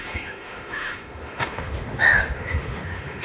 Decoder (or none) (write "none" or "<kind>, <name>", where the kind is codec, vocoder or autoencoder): autoencoder, DAC-VAE